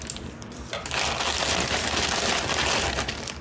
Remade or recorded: recorded